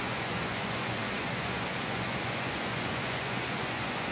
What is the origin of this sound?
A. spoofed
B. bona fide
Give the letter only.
A